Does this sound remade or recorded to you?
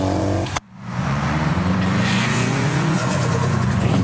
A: remade